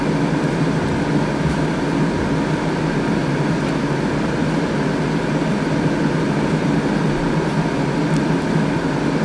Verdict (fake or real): real